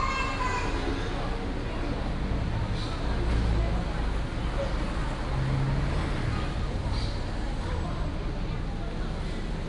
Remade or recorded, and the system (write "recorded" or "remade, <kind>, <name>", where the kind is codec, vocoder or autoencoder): recorded